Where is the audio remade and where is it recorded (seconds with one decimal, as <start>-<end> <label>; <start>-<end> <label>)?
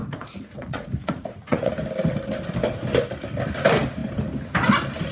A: 0.0-1.7 remade; 1.7-5.1 recorded